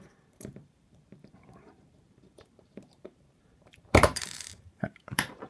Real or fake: fake